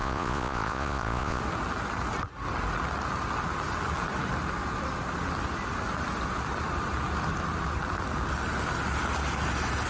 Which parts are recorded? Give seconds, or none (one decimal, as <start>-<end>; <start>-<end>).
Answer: 1.4-9.9